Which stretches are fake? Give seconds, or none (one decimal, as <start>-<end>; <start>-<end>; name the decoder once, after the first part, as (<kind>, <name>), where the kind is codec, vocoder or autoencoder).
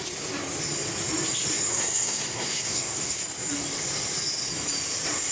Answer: 1.7-3.2 (codec, SNAC)